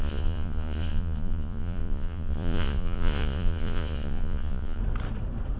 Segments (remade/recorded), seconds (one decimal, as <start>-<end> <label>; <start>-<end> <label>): 0.0-4.8 remade; 4.8-5.6 recorded